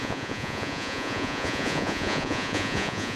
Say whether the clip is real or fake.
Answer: fake